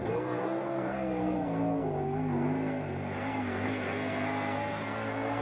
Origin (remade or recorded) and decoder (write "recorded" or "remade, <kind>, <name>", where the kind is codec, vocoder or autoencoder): remade, codec, SNAC